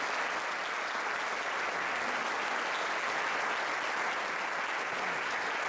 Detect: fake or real real